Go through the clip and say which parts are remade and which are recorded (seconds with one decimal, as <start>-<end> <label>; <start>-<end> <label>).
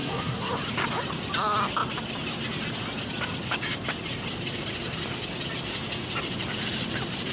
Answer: 0.0-0.5 remade; 0.5-7.3 recorded